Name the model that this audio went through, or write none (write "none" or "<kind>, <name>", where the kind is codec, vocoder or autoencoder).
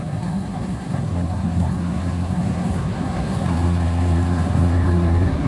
codec, SNAC